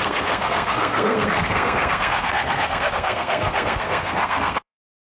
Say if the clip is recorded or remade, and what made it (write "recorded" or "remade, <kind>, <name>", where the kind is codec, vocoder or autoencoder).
remade, codec, SNAC